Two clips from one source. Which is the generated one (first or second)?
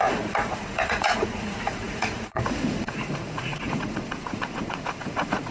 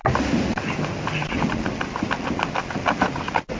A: first